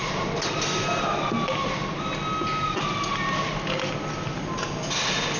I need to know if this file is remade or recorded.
recorded